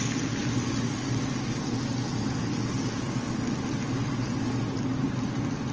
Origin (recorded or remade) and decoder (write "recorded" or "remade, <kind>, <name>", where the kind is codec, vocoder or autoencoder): recorded